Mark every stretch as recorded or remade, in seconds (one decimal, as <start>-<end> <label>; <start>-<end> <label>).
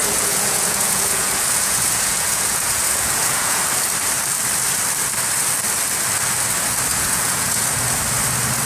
0.0-3.6 remade; 3.6-6.9 recorded; 6.9-7.8 remade; 7.8-8.7 recorded